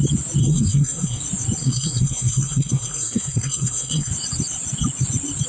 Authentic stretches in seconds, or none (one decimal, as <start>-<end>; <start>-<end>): 0.0-0.4; 1.2-1.6; 4.1-5.5